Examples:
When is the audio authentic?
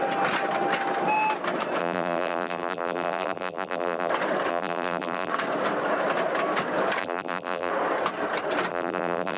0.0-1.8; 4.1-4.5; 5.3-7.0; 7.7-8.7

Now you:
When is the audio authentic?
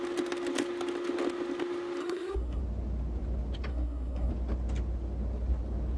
0.0-2.0; 2.6-3.7; 4.3-6.0